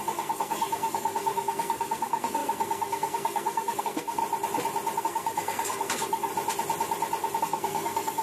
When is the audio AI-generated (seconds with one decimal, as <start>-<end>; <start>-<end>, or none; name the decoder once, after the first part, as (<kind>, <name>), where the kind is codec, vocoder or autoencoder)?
0.0-4.2 (codec, SNAC); 5.0-6.3; 7.4-8.2